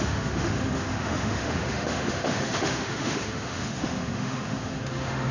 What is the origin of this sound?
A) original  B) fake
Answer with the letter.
B